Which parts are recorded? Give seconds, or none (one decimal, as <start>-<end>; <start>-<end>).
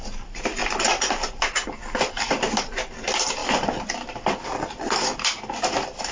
0.0-6.1